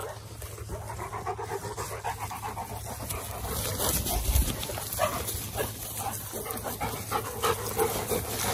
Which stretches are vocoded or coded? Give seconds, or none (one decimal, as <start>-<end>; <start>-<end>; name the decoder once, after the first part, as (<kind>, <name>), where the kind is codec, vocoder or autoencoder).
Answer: none